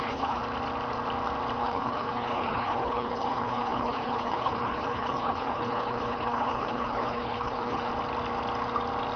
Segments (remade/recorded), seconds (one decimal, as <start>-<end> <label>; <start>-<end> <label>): 0.0-0.4 remade; 0.4-1.6 recorded; 1.6-7.9 remade; 7.9-9.2 recorded